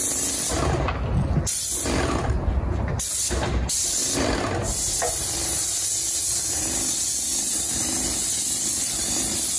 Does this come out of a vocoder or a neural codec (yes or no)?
no